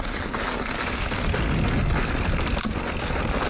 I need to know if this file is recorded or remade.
recorded